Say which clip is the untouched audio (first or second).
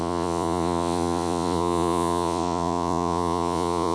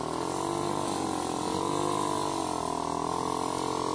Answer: second